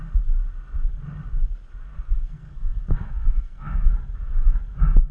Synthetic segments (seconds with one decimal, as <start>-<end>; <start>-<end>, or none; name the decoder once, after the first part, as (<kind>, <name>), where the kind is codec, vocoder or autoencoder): 1.9-3.9 (codec, SNAC)